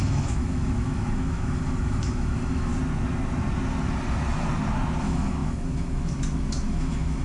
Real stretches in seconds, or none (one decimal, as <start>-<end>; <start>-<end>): 2.7-5.0